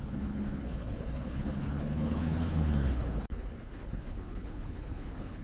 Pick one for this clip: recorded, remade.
remade